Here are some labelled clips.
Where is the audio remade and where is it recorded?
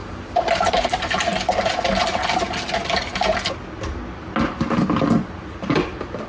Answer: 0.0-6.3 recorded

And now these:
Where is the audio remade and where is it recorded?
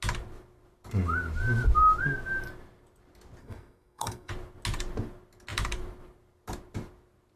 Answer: 0.0-3.4 recorded; 3.4-4.3 remade; 4.3-7.4 recorded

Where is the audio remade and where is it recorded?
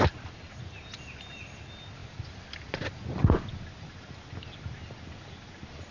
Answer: 0.0-5.9 recorded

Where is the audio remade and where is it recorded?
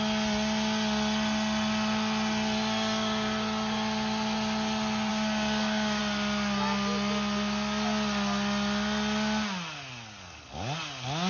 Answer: 0.0-5.1 recorded; 5.1-6.0 remade; 6.0-11.3 recorded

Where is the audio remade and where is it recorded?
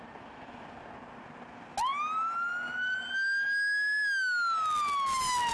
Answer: 0.0-5.5 recorded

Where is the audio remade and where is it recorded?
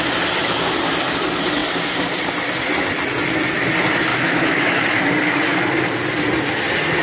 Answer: 0.0-4.1 recorded; 4.1-5.0 remade; 5.0-7.0 recorded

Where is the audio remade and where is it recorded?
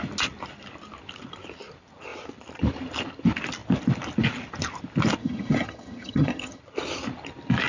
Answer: 0.0-5.2 recorded; 5.2-6.6 remade; 6.6-7.7 recorded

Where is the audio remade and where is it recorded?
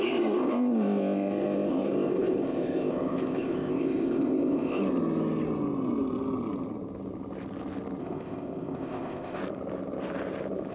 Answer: 0.0-4.8 remade; 4.8-8.0 recorded; 8.0-9.4 remade; 9.4-10.7 recorded